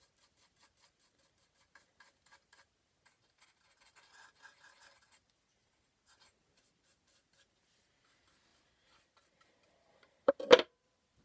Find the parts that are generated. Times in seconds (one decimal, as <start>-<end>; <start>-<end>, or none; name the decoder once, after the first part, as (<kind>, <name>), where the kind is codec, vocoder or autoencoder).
none